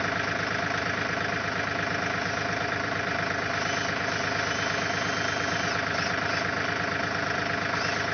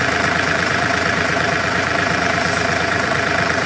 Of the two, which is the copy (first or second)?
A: second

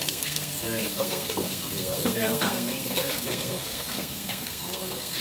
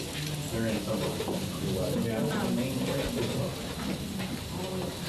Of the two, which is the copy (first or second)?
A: first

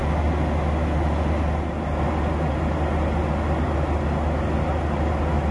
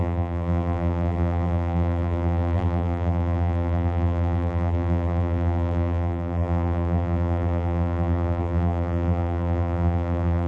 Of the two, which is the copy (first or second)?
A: second